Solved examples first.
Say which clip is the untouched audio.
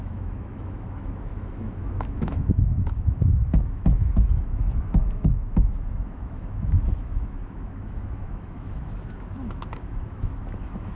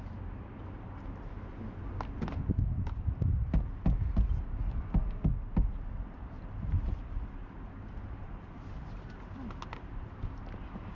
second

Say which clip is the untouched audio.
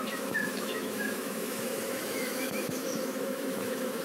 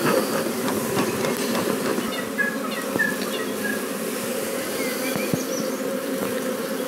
second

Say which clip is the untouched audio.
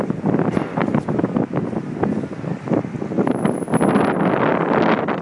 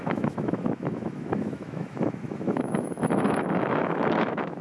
first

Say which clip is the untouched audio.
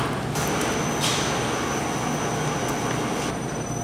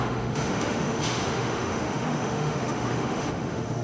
first